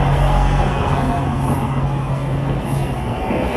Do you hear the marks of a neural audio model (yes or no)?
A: yes